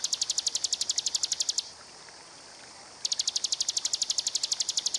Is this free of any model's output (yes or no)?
yes